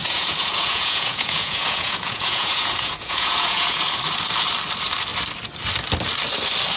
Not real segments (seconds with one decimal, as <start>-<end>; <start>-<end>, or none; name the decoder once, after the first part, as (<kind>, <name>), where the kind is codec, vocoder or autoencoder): 0.0-3.9 (vocoder, Vocos)